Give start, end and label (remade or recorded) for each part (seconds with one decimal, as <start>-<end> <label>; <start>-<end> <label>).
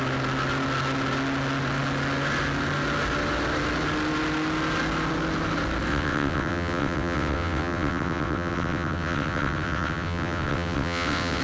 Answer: 0.0-5.9 recorded; 5.9-11.4 remade